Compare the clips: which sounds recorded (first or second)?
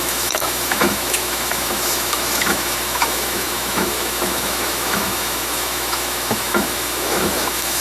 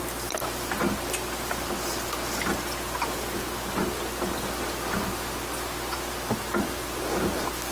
second